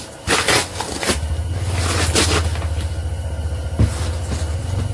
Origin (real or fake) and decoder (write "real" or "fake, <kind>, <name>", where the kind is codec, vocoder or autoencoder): real